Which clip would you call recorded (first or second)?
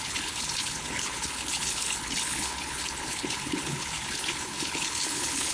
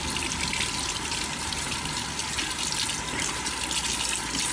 second